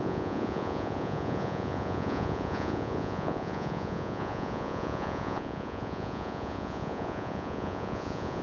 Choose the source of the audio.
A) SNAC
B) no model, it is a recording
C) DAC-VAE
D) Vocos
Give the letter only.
D